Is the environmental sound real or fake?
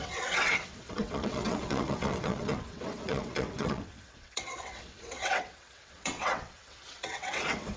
fake